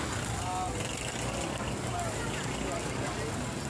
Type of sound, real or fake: real